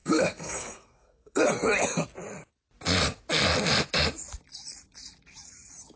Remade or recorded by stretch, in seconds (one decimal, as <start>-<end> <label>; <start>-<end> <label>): 0.0-1.4 remade; 1.4-6.0 recorded